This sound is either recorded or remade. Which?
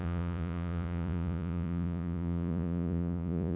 remade